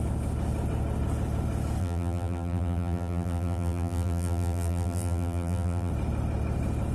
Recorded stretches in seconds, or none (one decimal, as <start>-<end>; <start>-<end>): 0.0-1.8; 5.9-6.9